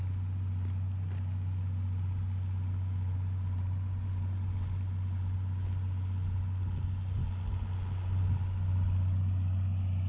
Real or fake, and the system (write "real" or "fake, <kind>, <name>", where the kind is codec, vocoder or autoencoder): real